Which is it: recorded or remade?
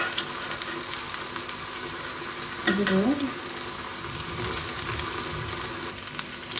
recorded